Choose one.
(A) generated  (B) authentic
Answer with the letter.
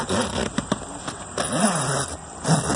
B